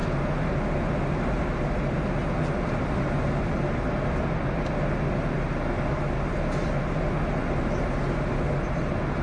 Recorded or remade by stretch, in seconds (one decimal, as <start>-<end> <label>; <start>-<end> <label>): 0.0-9.2 recorded